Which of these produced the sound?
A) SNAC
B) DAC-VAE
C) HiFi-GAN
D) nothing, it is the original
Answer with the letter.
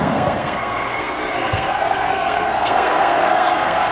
A